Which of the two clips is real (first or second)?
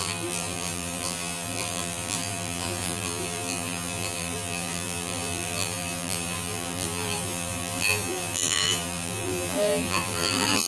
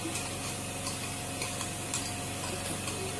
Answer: second